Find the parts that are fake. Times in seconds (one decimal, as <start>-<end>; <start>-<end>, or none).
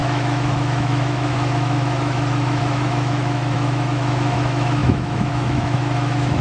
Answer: 0.0-6.4